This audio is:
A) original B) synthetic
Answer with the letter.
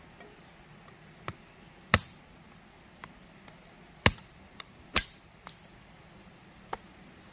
A